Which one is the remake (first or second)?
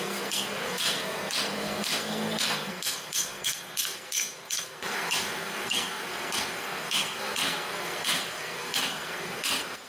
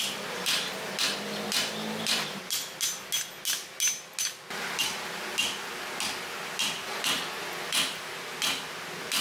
first